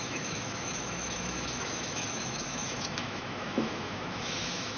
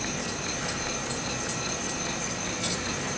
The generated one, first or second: first